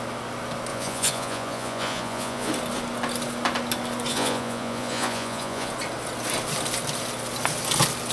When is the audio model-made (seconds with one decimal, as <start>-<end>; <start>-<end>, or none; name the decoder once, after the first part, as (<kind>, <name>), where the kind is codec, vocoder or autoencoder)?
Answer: 0.7-2.5 (vocoder, Vocos); 4.1-5.7